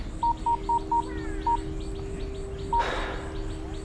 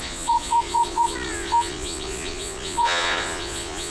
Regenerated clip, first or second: second